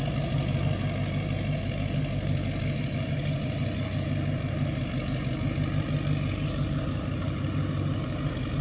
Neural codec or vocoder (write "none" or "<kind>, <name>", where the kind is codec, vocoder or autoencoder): none